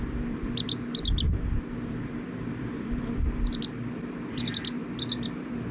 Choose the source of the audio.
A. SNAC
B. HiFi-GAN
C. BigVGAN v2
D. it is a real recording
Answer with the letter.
C